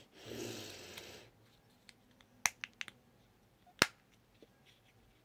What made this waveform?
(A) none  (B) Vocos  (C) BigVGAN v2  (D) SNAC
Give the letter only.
A